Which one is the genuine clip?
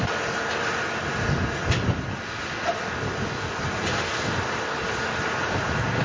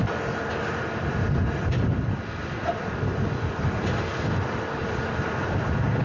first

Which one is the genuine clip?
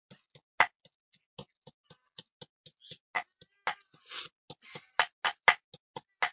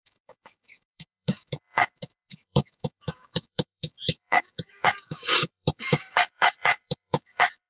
first